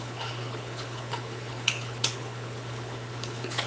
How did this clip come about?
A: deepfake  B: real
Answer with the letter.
A